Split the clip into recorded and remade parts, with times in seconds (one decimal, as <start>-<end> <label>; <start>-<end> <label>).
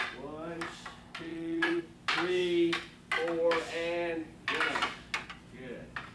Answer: 0.0-1.3 recorded; 1.3-1.8 remade; 1.8-6.1 recorded